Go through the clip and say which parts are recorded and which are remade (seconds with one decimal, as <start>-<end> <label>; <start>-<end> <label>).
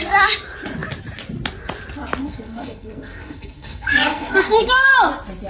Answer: 0.0-2.2 recorded; 2.2-4.9 remade; 4.9-5.5 recorded